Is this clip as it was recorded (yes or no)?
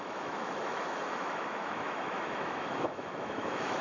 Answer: no